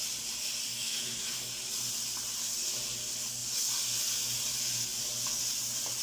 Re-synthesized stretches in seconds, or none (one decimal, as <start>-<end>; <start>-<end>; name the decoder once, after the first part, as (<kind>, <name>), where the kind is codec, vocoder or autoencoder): 0.7-1.5 (autoencoder, DAC-VAE)